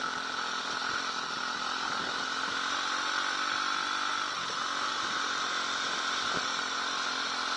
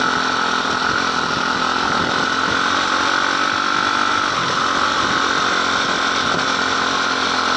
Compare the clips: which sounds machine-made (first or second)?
first